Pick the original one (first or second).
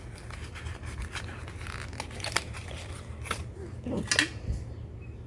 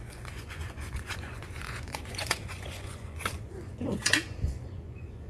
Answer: first